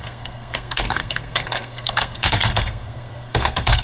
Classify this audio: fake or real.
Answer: fake